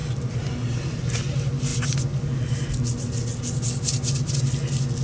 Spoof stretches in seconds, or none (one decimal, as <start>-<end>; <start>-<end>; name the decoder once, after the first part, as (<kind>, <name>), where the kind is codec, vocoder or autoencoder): none